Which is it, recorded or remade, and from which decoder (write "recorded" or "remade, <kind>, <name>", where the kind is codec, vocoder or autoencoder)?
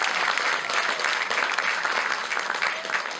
recorded